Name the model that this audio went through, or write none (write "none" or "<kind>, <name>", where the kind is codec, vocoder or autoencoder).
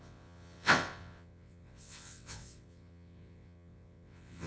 vocoder, WaveNeXt